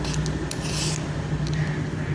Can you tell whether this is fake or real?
real